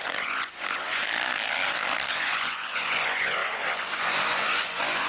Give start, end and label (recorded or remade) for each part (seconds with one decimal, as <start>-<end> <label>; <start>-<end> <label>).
0.0-1.0 remade; 1.0-2.1 recorded; 2.1-5.1 remade